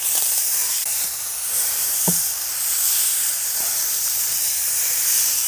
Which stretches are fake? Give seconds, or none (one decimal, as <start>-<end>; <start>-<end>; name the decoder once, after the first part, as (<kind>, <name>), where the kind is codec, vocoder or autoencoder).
0.0-5.5 (vocoder, BigVGAN v2)